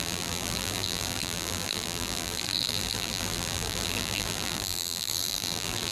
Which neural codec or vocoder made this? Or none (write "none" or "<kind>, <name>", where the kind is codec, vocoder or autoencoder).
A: vocoder, BigVGAN v2